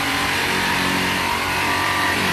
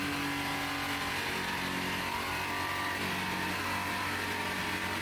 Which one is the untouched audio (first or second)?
second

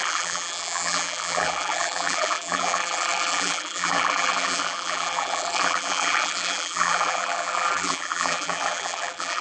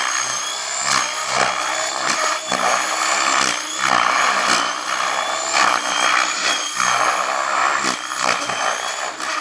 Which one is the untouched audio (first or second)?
second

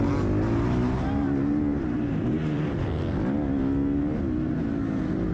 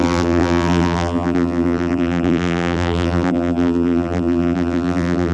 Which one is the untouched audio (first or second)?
first